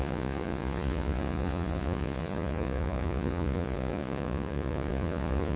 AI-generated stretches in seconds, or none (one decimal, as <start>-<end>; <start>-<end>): 0.0-5.6